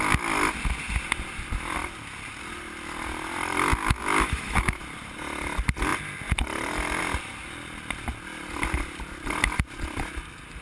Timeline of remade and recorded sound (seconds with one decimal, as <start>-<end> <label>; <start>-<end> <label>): 0.0-3.8 recorded; 3.8-4.8 remade; 4.8-10.6 recorded

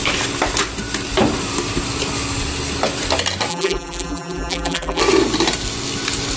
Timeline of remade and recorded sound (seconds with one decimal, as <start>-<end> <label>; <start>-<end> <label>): 0.0-3.5 recorded; 3.5-5.0 remade; 5.0-6.4 recorded

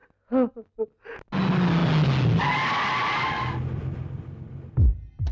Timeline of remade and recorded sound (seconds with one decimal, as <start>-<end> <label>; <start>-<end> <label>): 0.0-5.3 recorded

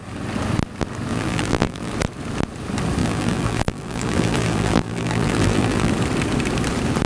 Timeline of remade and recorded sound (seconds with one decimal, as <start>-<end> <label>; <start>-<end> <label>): 0.0-1.1 recorded; 1.1-1.9 remade; 1.9-3.0 recorded; 3.0-5.9 remade; 5.9-7.1 recorded

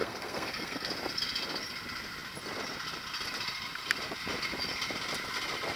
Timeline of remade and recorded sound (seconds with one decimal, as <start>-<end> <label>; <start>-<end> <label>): 0.0-0.9 remade; 0.9-5.8 recorded

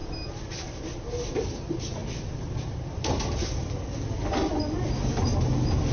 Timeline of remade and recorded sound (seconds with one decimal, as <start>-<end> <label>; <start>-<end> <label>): 0.0-2.0 recorded; 2.0-3.1 remade; 3.1-5.9 recorded

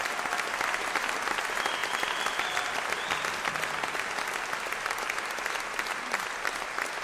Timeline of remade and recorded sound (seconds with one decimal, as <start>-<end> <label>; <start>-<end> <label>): 0.0-7.0 recorded

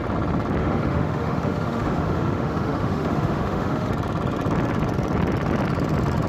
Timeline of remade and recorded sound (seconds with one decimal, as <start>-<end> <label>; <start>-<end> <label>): 0.0-0.6 recorded; 0.6-3.9 remade; 3.9-6.3 recorded